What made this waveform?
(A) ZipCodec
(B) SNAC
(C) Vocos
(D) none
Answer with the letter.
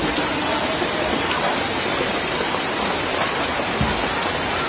D